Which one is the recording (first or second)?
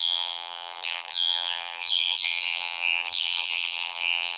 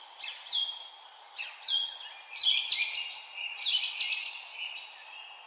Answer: second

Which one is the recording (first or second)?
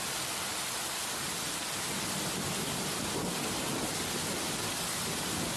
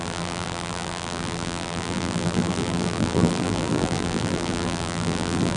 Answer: first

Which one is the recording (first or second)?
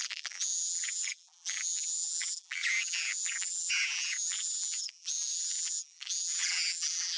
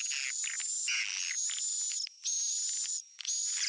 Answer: second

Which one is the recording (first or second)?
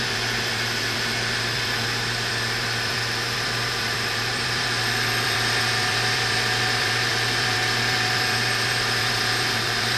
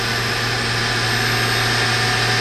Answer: second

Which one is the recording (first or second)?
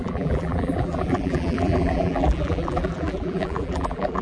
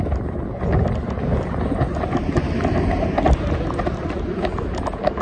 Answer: second